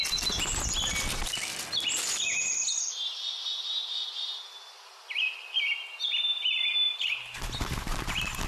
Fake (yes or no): no